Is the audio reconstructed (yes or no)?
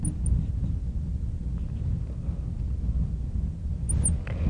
no